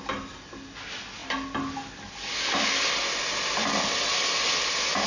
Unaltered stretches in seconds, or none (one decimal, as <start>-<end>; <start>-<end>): 0.0-5.1